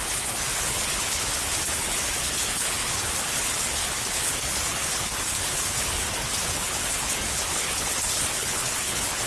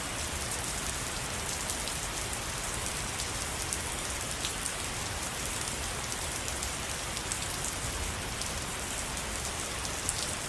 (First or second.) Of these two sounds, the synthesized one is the first